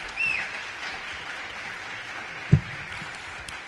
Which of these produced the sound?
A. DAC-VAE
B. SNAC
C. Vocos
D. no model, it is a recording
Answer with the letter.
D